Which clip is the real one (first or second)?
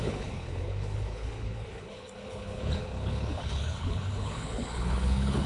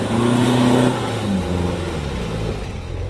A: second